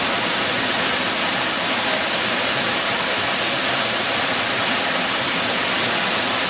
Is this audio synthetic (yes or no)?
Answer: no